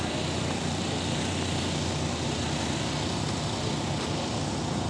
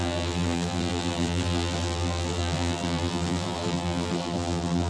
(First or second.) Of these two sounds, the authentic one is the first